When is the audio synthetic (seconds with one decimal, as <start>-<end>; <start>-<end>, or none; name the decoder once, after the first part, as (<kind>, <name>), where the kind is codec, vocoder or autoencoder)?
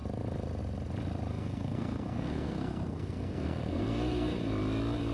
1.3-4.4 (codec, SNAC)